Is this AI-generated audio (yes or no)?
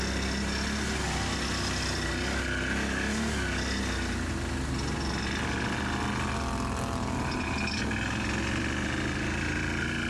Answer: no